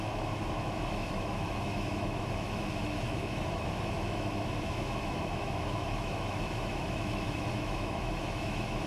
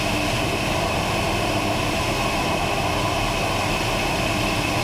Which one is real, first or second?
second